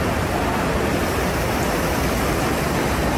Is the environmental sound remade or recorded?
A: recorded